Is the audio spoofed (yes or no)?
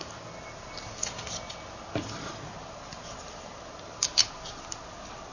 no